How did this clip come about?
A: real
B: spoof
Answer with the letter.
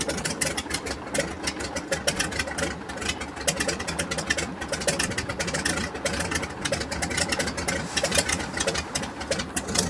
A